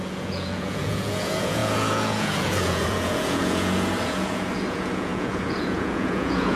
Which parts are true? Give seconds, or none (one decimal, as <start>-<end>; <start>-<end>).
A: none